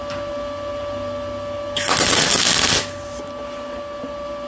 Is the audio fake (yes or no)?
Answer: no